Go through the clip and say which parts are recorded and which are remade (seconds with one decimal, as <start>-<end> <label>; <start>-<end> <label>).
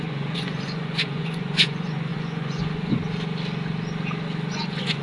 0.0-3.0 remade; 3.0-4.5 recorded; 4.5-5.0 remade